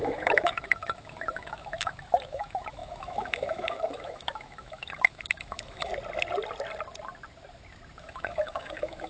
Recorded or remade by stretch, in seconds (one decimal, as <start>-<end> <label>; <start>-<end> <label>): 0.0-5.9 remade; 5.9-8.0 recorded; 8.0-9.1 remade